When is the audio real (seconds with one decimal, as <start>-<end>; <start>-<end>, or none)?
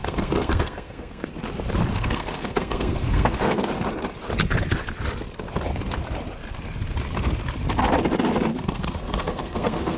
1.3-1.9; 3.7-8.5